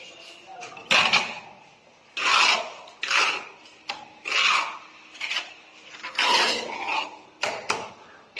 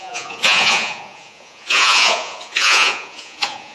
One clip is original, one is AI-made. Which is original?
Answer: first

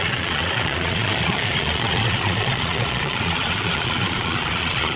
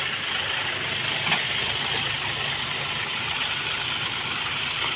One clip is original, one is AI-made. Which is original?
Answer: second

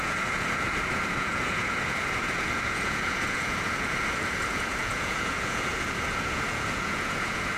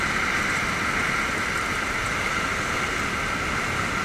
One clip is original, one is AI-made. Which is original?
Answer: second